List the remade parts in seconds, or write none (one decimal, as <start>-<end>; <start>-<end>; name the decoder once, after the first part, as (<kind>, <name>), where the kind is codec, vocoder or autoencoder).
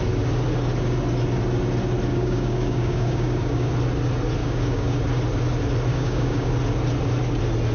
2.1-3.7 (codec, DAC); 4.4-5.0; 5.9-6.5